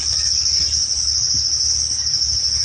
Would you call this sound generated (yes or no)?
no